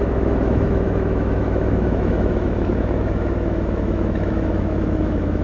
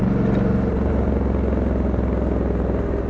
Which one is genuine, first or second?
second